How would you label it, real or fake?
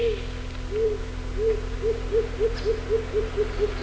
real